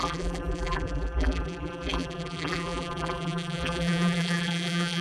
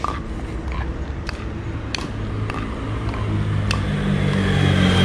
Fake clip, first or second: first